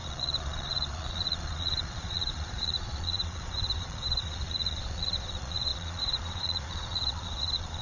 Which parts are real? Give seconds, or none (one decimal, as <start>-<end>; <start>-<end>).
none